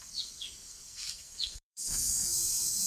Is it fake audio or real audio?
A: fake